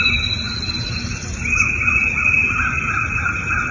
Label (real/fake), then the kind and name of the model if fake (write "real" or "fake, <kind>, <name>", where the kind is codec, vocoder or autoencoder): real